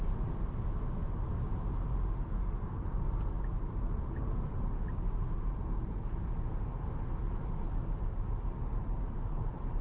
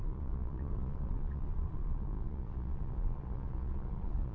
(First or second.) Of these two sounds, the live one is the first